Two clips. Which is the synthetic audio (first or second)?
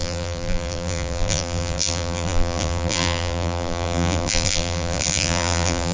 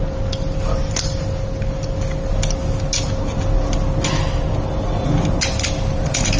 first